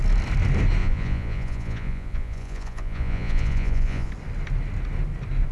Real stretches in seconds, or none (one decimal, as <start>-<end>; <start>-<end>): 0.0-0.8; 4.1-5.5